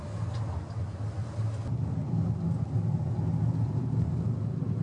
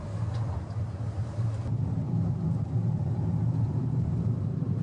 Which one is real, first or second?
first